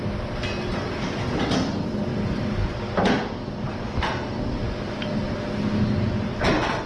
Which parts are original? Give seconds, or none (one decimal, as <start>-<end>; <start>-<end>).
0.0-6.9